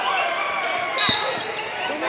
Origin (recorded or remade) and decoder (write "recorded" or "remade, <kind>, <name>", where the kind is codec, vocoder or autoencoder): recorded